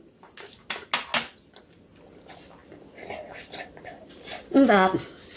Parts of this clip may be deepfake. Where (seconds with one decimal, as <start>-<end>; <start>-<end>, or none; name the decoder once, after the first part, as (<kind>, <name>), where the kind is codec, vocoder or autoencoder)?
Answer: none